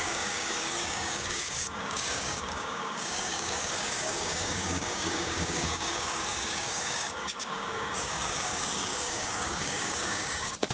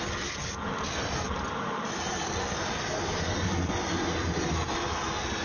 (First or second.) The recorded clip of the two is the second